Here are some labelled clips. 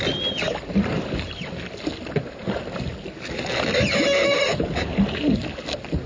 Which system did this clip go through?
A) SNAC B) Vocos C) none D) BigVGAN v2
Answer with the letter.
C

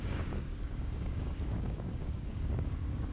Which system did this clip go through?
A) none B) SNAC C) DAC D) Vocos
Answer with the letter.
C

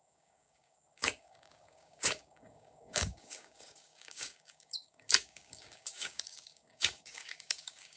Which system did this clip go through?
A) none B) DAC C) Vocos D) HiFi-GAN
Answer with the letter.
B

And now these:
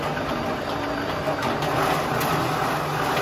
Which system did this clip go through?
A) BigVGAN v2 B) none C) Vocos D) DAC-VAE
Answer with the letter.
B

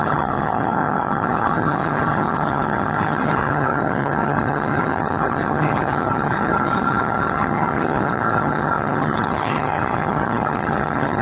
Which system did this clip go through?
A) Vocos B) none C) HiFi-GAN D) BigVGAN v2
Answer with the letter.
C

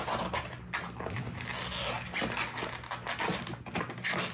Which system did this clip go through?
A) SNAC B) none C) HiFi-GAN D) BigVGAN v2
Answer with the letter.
B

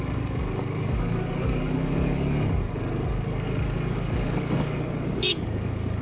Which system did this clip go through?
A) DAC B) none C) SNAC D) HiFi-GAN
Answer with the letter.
A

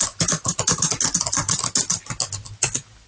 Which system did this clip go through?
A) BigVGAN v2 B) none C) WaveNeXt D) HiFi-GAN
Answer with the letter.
B